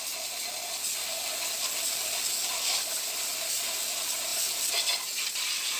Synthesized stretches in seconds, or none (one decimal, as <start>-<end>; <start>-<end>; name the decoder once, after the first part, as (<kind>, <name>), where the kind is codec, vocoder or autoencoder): none